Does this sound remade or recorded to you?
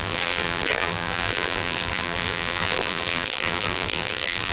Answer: remade